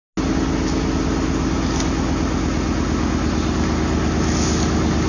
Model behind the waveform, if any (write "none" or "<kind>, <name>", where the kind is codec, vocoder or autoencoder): none